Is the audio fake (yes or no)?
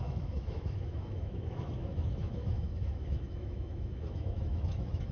yes